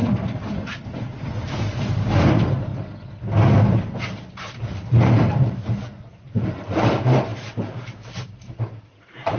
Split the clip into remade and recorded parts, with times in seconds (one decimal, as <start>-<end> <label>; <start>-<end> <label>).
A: 0.0-0.6 recorded; 0.6-2.7 remade; 2.7-4.4 recorded; 4.4-9.4 remade